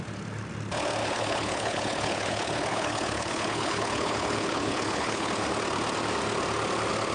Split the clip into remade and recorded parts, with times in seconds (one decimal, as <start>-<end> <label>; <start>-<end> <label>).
0.0-1.0 recorded; 1.0-5.3 remade; 5.3-7.1 recorded